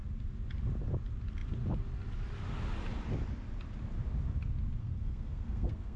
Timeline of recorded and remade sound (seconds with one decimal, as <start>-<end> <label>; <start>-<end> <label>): 0.0-4.8 recorded; 4.8-6.0 remade